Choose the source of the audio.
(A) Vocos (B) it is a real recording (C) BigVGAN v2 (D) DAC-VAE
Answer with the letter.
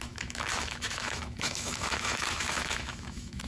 D